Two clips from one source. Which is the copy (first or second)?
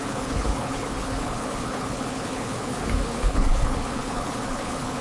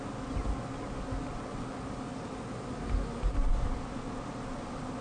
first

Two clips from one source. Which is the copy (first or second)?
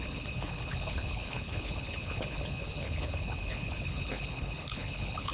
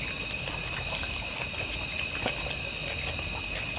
first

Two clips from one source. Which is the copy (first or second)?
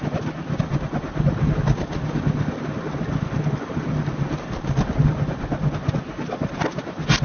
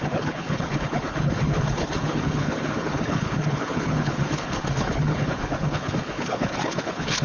second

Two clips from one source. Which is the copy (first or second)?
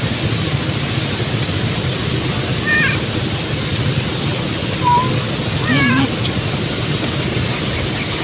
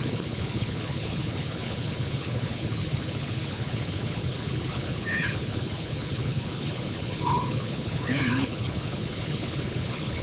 second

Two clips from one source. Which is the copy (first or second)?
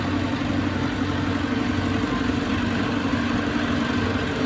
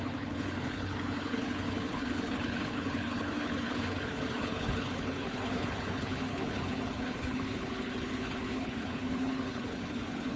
second